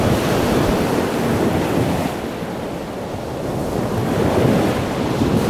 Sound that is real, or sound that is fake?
real